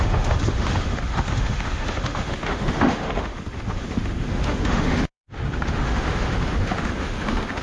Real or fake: fake